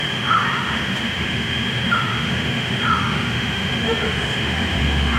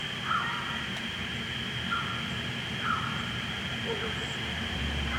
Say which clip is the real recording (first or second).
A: second